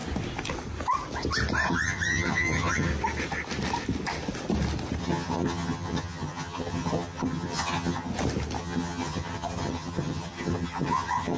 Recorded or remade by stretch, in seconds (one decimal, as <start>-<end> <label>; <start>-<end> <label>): 0.0-1.7 recorded; 1.7-2.9 remade; 2.9-5.0 recorded; 5.0-8.1 remade; 8.1-8.6 recorded; 8.6-11.4 remade